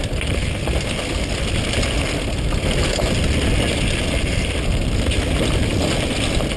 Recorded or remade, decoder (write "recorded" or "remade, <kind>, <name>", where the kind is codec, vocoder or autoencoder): recorded